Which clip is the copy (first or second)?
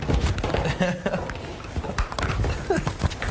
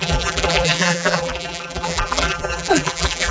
second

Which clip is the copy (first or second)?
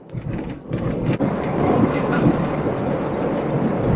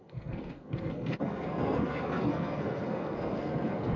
second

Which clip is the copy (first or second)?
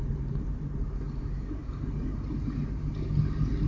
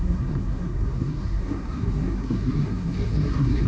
second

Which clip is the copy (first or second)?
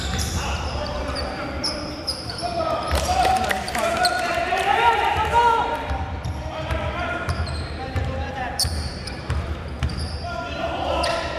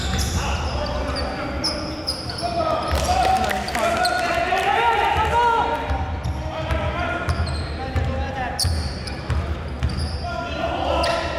first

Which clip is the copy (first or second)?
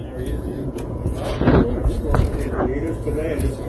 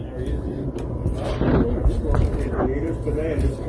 first